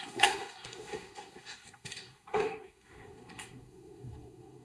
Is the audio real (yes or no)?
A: no